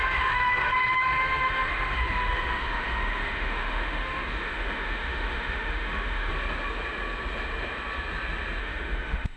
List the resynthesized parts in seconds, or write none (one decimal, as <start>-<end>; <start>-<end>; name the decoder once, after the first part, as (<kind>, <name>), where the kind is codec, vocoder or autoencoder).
0.0-6.3 (autoencoder, DAC-VAE); 8.6-9.4